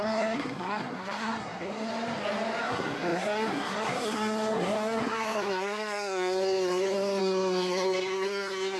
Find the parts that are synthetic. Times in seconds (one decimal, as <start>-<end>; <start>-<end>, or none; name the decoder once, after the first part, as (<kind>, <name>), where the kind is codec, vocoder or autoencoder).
0.0-1.9 (codec, SNAC); 2.6-8.8